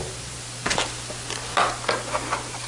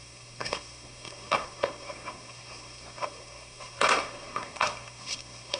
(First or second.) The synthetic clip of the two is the second